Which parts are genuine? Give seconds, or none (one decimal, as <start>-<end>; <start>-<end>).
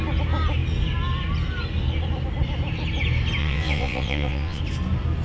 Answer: 0.0-3.4; 4.6-5.2